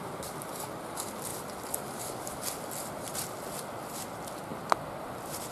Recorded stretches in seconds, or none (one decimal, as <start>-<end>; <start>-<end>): 0.0-5.5